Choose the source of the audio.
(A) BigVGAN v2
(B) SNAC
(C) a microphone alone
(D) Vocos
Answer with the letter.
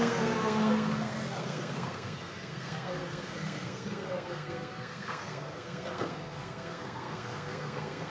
B